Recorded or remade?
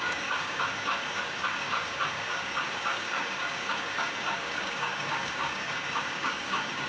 remade